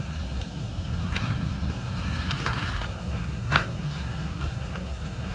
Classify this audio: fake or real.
fake